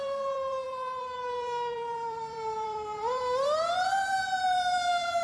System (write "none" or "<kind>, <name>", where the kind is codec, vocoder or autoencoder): vocoder, BigVGAN v2